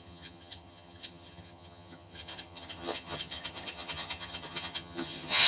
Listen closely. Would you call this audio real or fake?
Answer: fake